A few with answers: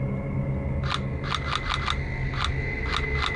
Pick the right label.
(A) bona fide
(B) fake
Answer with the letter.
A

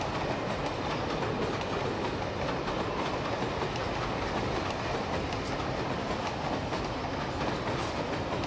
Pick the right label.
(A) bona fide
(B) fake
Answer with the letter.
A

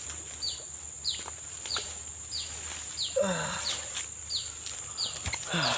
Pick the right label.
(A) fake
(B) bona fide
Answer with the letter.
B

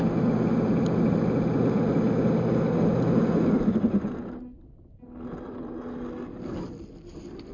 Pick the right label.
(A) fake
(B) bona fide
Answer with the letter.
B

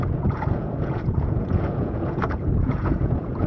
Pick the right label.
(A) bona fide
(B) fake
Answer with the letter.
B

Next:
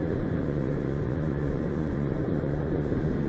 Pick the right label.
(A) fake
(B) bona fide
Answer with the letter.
A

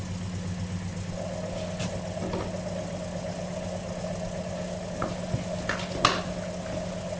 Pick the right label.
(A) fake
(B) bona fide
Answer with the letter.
B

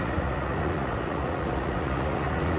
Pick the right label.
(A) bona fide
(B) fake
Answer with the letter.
B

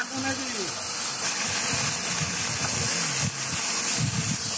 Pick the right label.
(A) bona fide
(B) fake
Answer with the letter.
A